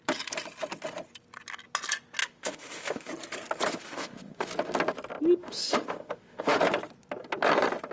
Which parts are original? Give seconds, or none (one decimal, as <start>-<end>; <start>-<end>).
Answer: 0.0-2.2; 3.1-3.7; 4.5-5.4; 6.6-7.9